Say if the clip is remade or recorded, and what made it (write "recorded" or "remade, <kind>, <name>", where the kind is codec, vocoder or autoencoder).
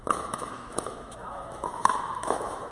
remade, autoencoder, DAC-VAE